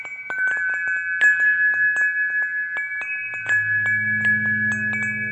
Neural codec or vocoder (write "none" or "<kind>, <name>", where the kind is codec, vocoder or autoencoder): none